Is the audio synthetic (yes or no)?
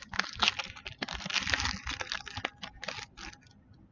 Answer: no